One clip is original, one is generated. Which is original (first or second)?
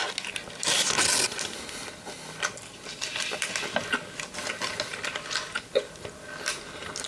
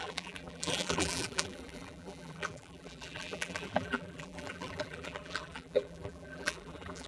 first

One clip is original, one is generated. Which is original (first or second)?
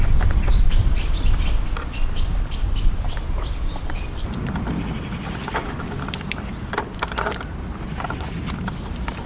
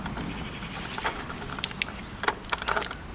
second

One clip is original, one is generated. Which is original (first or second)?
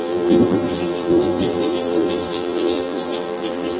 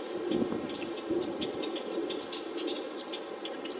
second